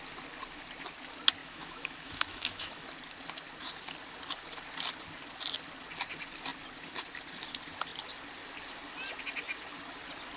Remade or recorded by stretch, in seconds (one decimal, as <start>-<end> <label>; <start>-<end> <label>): 0.0-1.4 recorded; 1.4-2.8 remade; 2.8-10.4 recorded